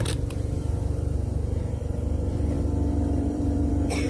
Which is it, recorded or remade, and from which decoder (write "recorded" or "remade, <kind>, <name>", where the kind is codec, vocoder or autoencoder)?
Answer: remade, vocoder, BigVGAN v2